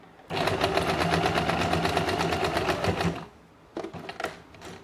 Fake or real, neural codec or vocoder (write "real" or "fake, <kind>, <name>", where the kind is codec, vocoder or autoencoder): real